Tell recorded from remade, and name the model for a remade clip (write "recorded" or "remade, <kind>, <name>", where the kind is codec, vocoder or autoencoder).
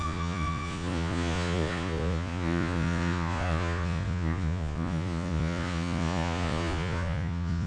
remade, vocoder, Vocos